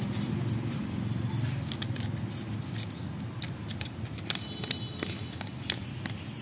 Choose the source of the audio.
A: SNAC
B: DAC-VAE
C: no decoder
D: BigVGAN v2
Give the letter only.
C